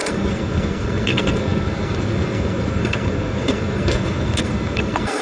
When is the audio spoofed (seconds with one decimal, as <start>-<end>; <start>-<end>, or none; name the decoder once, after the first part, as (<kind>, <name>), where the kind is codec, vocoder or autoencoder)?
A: 0.0-5.2 (codec, SNAC)